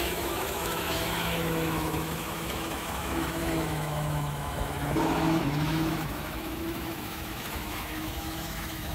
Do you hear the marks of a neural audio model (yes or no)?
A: yes